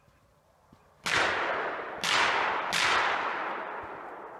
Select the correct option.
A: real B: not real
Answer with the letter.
A